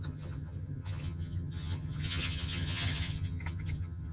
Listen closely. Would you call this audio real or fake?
fake